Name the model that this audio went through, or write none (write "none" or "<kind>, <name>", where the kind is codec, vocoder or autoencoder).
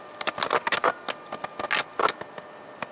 none